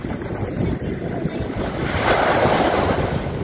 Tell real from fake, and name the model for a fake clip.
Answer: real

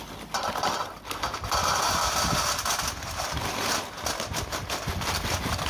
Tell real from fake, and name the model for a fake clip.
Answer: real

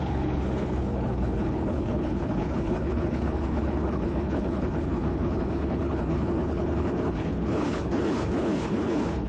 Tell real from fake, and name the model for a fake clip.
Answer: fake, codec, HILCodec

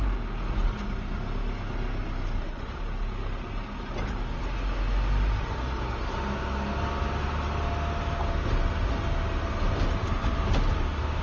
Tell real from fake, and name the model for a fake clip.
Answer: real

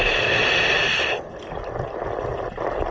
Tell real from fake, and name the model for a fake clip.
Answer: real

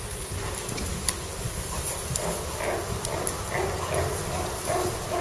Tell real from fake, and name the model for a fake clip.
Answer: real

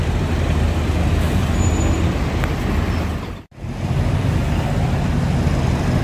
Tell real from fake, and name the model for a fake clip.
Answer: real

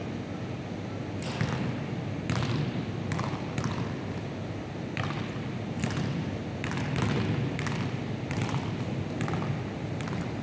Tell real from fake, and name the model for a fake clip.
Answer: real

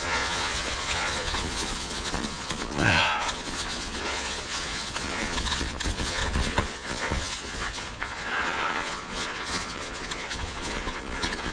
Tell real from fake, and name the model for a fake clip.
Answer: fake, vocoder, Vocos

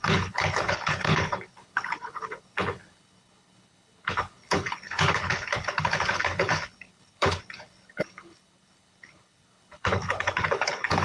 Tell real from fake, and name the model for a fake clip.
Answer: fake, codec, HILCodec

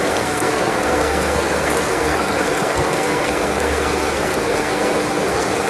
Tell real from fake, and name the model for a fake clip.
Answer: fake, codec, SNAC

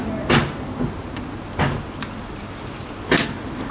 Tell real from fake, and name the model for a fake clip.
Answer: real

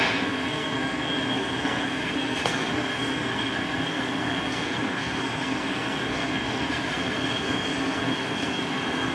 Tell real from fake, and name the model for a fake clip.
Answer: fake, codec, SNAC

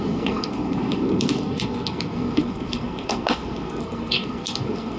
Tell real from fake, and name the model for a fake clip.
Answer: fake, codec, SNAC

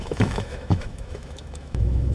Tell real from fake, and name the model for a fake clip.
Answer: fake, autoencoder, DAC-VAE